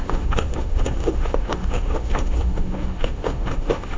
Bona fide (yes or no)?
no